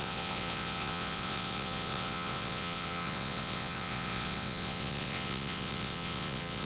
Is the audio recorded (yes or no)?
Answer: no